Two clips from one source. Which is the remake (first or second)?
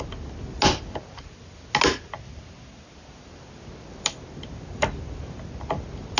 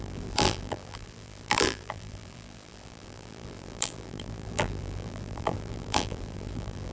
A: second